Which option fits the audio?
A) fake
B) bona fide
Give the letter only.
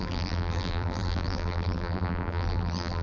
A